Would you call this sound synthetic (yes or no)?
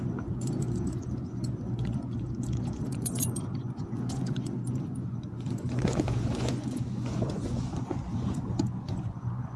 yes